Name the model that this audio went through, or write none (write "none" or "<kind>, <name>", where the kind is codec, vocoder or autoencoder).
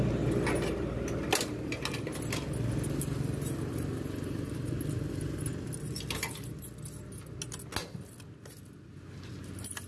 none